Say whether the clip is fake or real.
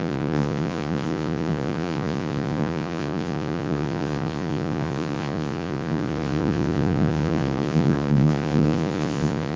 fake